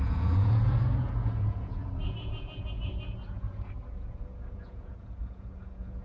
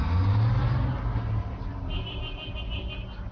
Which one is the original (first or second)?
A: second